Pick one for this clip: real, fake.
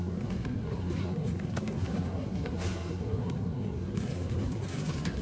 fake